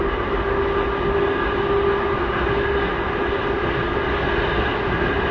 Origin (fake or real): real